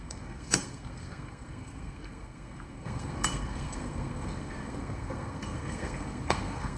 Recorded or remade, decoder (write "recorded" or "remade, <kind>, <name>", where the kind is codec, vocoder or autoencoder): remade, codec, SNAC